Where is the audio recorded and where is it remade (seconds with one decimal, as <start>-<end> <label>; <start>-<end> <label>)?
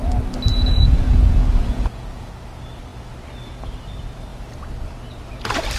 0.0-0.5 recorded; 0.5-2.3 remade; 2.3-5.8 recorded